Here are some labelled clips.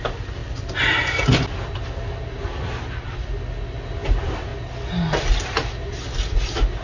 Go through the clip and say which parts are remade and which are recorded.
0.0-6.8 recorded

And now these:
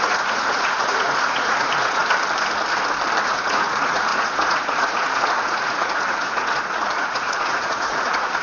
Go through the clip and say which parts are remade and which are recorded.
0.0-2.0 remade; 2.0-3.2 recorded; 3.2-8.4 remade

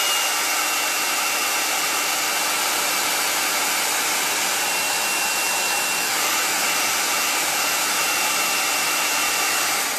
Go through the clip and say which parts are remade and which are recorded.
0.0-10.0 recorded

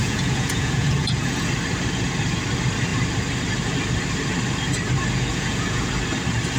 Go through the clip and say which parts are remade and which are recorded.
0.0-1.5 remade; 1.5-5.3 recorded; 5.3-5.9 remade; 5.9-6.6 recorded

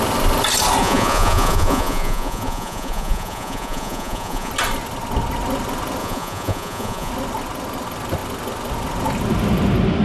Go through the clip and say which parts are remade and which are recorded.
0.0-0.8 recorded; 0.8-4.5 remade; 4.5-6.0 recorded; 6.0-7.1 remade; 7.1-10.0 recorded

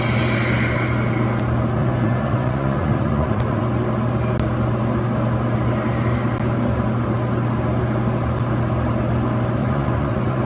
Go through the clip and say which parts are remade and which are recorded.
0.0-1.8 recorded; 1.8-3.6 remade; 3.6-9.6 recorded; 9.6-10.4 remade

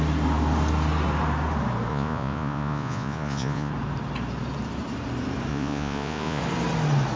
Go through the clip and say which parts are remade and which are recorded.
0.0-1.9 recorded; 1.9-3.7 remade; 3.7-5.5 recorded; 5.5-6.4 remade; 6.4-7.2 recorded